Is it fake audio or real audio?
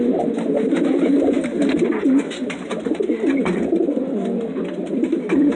real